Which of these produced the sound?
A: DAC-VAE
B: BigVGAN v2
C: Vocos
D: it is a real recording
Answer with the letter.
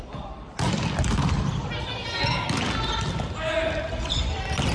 D